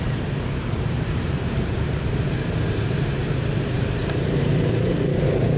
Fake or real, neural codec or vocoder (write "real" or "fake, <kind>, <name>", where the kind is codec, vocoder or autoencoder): fake, vocoder, BigVGAN v2